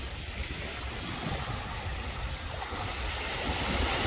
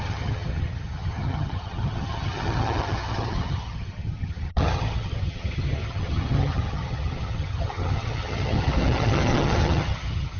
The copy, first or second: second